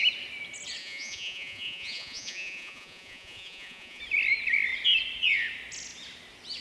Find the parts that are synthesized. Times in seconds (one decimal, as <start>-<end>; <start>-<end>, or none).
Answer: 0.8-4.0